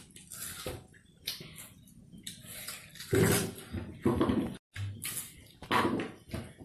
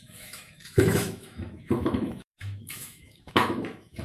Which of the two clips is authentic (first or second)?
first